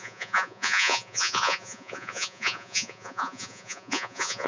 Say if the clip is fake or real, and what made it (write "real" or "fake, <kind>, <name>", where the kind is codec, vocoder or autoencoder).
fake, vocoder, Vocos